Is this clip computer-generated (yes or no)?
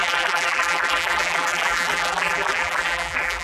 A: yes